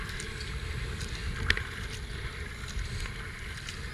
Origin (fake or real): real